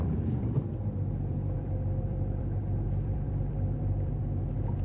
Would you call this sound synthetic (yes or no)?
yes